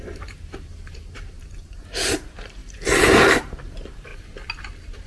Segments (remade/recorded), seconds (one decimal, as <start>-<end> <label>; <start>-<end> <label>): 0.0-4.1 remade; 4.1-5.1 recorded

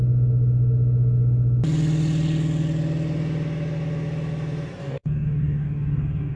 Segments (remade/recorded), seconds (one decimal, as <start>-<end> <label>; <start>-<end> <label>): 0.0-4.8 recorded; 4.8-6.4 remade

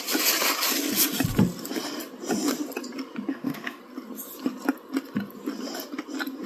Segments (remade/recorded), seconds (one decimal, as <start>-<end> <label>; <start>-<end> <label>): 0.0-3.3 recorded; 3.3-3.8 remade; 3.8-6.5 recorded

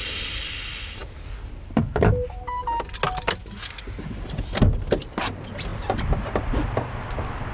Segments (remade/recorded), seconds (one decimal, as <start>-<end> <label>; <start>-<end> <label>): 0.0-7.5 recorded